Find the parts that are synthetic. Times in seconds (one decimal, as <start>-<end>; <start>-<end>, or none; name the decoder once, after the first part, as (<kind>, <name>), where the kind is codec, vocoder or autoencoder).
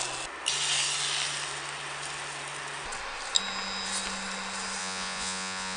4.8-5.8 (vocoder, Vocos)